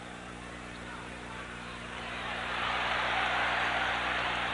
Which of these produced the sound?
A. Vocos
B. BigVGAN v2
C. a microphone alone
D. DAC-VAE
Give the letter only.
B